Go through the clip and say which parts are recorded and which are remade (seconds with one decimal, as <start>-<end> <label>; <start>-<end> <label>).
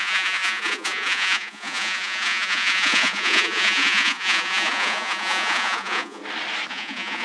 0.0-6.2 remade; 6.2-6.7 recorded; 6.7-7.2 remade